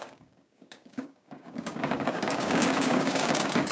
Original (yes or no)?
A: no